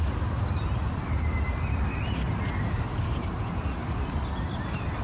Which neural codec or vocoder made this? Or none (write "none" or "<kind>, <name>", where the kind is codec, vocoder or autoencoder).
none